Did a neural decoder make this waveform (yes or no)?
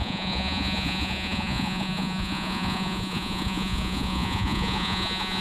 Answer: yes